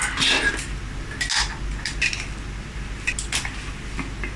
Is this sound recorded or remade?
recorded